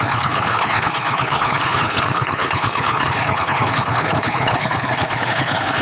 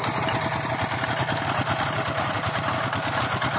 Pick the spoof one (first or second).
first